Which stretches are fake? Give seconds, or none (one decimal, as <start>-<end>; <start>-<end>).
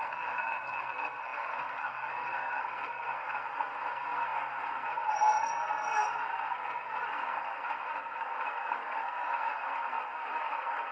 0.0-10.9